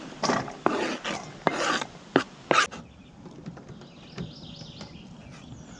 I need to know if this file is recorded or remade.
recorded